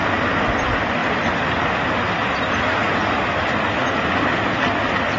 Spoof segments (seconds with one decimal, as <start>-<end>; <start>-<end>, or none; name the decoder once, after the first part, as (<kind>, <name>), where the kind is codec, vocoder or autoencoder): none